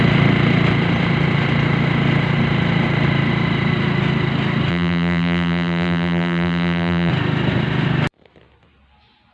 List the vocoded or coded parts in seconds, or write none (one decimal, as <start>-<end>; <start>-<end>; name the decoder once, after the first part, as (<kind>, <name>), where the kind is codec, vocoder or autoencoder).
4.7-7.1 (vocoder, BigVGAN v2)

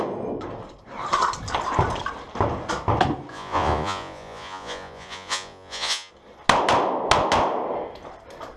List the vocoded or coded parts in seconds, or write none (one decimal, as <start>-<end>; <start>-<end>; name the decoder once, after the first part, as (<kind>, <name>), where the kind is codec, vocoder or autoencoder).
3.3-6.1 (vocoder, Vocos)

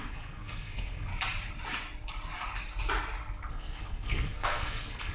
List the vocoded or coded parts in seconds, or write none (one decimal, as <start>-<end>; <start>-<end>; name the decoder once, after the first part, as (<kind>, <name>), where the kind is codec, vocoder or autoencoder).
0.0-1.1 (codec, SNAC); 3.5-5.1

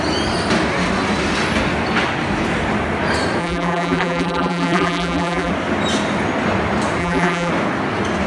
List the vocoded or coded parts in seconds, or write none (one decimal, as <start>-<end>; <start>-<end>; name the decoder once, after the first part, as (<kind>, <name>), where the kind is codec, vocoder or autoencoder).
3.4-5.5 (vocoder, BigVGAN v2); 7.0-7.5

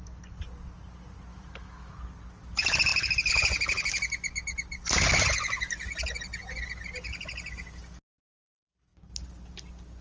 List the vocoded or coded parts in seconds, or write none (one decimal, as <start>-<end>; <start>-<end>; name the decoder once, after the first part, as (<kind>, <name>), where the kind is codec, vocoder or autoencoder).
1.3-2.0 (autoencoder, DAC-VAE)

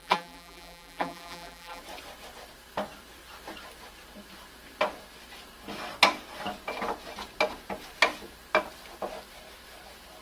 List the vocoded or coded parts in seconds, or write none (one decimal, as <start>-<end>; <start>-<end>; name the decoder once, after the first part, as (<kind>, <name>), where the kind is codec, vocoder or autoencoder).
0.0-1.8 (vocoder, BigVGAN v2)

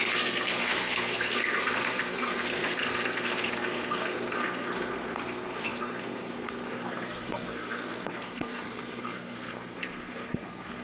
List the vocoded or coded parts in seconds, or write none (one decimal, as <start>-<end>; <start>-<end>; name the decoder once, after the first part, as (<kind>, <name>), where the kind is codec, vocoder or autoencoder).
0.0-10.8 (codec, SNAC)